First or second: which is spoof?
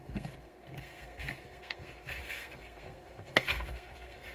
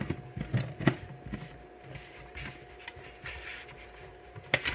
first